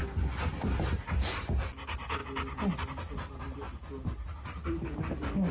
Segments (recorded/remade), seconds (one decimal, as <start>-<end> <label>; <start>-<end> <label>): 0.0-5.5 recorded